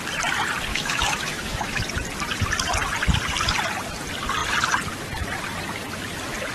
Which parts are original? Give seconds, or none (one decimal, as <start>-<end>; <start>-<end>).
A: 0.0-0.7; 1.8-6.5